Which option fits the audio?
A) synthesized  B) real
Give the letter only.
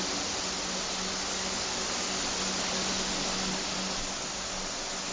B